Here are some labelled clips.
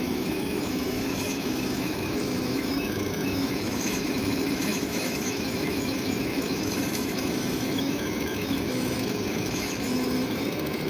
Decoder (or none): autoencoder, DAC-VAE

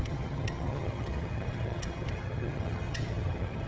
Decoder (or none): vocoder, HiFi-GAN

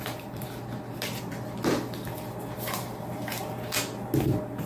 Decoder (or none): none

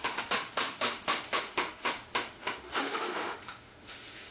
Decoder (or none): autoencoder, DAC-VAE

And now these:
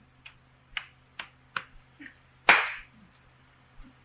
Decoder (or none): none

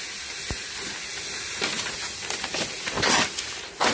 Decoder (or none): none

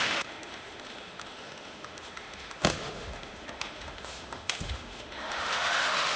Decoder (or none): autoencoder, DAC-VAE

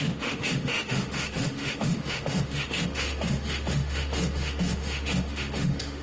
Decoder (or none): autoencoder, DAC-VAE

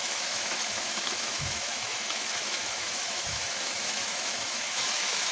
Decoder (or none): autoencoder, DAC-VAE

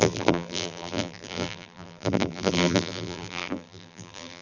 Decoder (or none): vocoder, BigVGAN v2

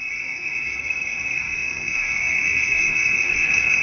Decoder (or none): codec, SNAC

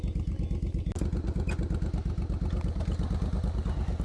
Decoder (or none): none